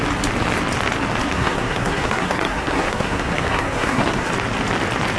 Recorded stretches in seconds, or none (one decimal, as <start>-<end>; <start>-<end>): 0.0-1.2; 4.3-5.2